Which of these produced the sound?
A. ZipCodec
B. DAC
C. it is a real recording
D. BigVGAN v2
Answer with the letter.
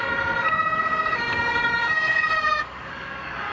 B